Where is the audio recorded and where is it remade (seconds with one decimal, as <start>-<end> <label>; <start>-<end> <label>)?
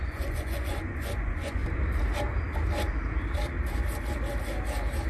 0.0-1.6 remade; 1.6-5.1 recorded